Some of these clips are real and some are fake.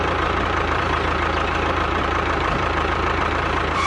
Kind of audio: fake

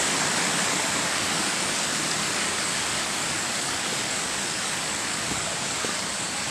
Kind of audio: fake